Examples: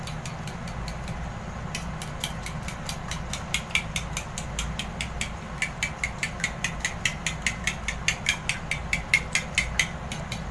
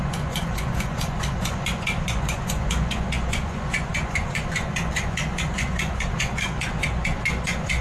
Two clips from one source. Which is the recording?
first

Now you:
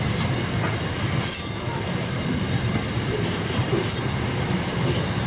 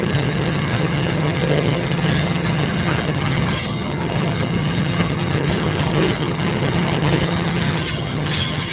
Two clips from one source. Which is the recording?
first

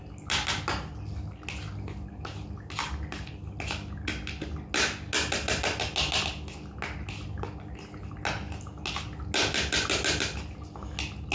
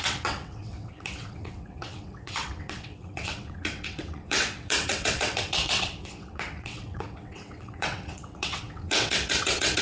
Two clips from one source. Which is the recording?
first